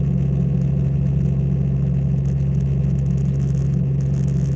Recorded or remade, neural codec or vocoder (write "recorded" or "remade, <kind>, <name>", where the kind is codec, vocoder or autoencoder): recorded